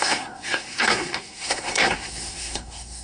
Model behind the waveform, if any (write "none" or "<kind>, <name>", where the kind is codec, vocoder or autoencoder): codec, SNAC